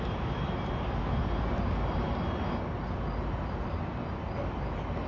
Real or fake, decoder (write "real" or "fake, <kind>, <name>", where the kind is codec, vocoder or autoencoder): real